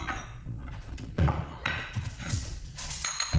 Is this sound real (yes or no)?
no